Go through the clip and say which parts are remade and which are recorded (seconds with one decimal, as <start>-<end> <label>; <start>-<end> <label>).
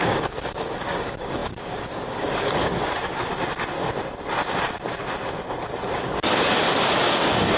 0.0-3.3 remade; 3.3-5.9 recorded; 5.9-7.6 remade